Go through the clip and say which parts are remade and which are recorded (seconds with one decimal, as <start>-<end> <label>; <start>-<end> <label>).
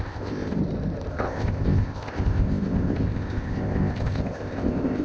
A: 0.0-0.6 remade; 0.6-1.1 recorded; 1.1-5.0 remade